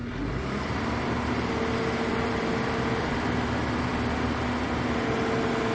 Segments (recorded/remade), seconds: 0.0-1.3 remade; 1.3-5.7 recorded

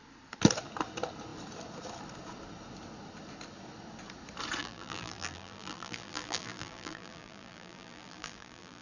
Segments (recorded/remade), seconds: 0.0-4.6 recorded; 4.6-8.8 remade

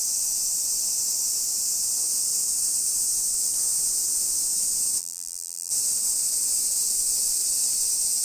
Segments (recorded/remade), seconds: 0.0-5.0 recorded; 5.0-5.7 remade; 5.7-8.2 recorded